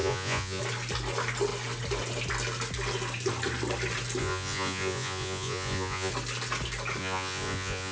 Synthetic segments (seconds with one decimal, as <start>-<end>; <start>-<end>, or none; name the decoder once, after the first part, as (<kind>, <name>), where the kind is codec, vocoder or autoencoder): 0.0-0.6 (vocoder, Vocos); 4.2-6.1; 7.0-7.9